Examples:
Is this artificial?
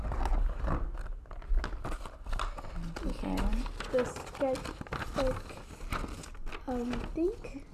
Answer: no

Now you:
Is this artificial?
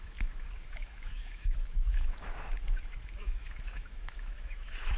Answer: yes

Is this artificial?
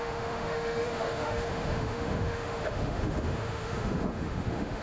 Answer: yes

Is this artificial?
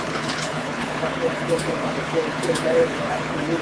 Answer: yes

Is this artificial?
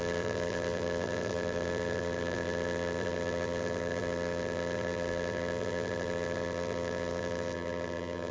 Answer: yes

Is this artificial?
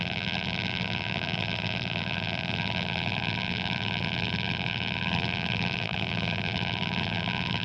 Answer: yes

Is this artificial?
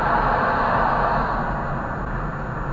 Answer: no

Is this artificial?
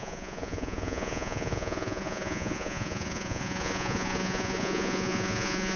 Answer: yes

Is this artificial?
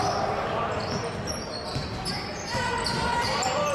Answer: no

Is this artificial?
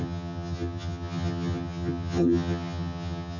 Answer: yes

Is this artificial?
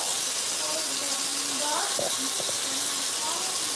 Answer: no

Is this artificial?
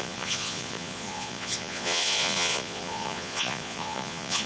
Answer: yes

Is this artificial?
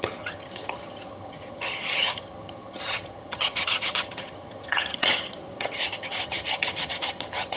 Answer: yes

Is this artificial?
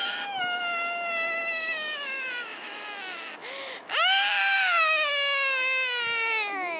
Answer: yes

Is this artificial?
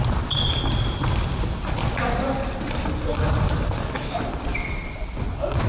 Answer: no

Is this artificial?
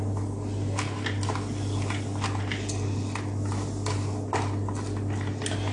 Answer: no